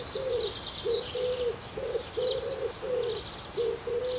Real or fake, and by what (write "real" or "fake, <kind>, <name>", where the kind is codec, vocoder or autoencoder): real